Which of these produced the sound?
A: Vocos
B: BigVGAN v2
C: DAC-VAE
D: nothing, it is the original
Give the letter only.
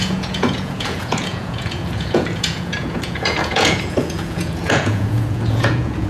A